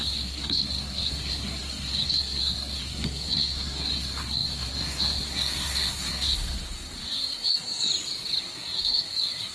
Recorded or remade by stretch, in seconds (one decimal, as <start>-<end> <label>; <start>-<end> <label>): 0.0-7.9 remade; 7.9-8.4 recorded; 8.4-9.5 remade